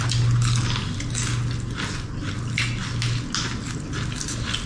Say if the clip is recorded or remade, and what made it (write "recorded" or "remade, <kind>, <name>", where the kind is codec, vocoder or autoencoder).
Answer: recorded